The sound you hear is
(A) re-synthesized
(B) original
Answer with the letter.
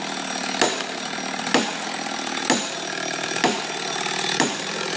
B